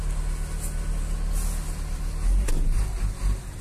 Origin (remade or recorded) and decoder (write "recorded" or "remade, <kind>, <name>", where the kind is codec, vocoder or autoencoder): recorded